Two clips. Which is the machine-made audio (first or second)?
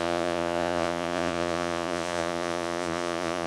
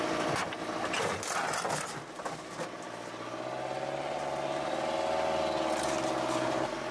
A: first